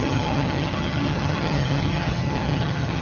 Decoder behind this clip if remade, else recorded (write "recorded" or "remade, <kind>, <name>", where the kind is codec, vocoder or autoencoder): remade, vocoder, HiFi-GAN